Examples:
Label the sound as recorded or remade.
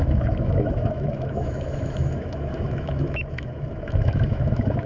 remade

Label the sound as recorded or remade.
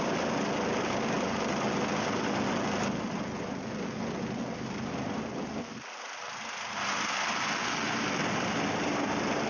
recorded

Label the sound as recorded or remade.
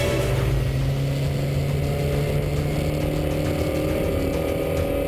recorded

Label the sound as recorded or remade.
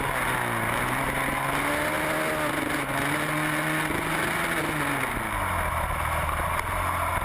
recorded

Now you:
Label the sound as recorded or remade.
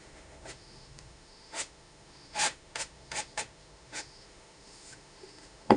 remade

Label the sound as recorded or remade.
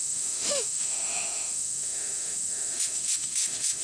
remade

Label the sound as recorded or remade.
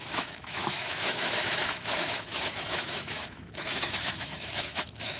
remade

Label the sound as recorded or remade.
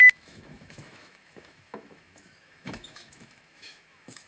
remade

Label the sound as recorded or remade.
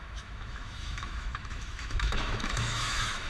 remade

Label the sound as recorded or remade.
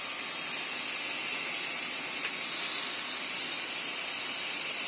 recorded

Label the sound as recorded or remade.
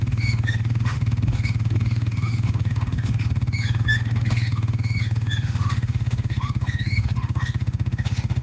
remade